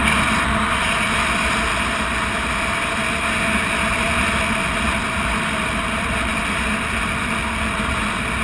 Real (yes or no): yes